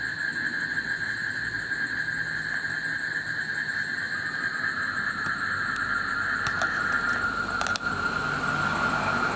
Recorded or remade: recorded